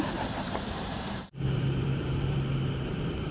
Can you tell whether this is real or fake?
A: fake